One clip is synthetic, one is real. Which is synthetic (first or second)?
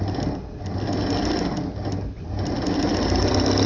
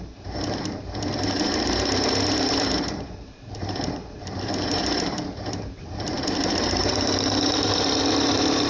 second